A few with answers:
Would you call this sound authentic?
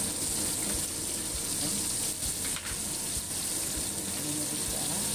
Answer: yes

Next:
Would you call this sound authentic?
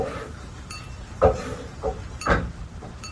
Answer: no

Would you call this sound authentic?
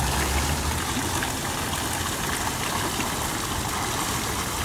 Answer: yes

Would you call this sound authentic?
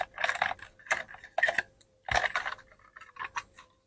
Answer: yes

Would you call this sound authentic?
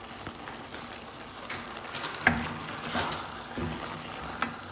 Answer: yes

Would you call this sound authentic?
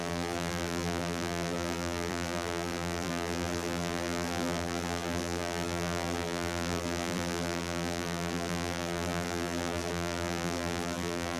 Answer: no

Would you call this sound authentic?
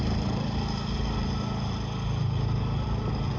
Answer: no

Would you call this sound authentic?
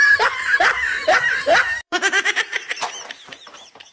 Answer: no